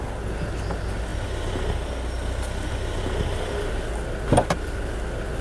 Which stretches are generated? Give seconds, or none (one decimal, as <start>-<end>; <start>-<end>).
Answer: none